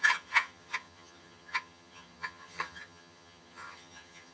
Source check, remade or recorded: remade